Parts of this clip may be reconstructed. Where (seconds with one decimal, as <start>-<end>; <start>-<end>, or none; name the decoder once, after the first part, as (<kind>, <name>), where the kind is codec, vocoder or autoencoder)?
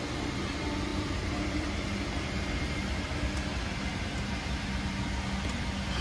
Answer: 0.9-2.8 (vocoder, BigVGAN v2); 3.9-4.7